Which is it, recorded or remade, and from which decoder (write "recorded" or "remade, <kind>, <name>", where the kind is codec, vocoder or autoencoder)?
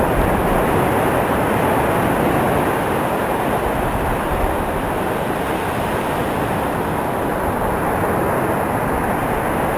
recorded